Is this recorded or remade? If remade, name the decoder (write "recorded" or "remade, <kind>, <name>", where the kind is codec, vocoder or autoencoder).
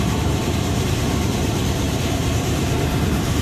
remade, vocoder, BigVGAN v2